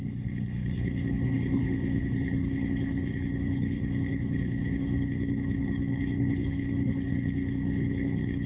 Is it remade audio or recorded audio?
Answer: remade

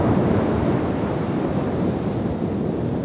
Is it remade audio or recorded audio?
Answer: recorded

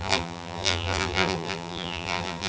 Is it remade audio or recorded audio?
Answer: remade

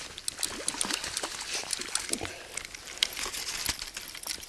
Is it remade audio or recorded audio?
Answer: recorded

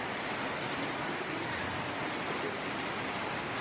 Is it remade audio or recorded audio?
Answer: recorded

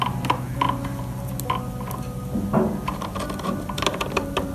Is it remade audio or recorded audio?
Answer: recorded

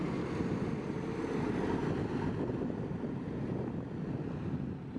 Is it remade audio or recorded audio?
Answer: recorded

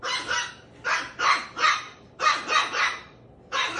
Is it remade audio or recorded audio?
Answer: recorded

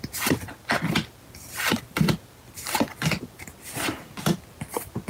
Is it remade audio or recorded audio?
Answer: recorded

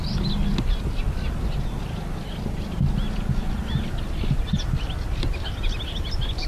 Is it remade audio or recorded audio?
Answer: recorded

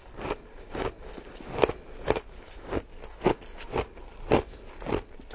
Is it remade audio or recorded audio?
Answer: recorded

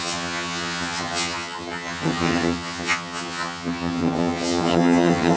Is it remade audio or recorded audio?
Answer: remade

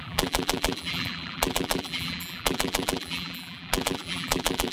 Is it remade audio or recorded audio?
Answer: remade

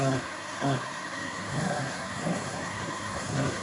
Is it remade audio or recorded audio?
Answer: remade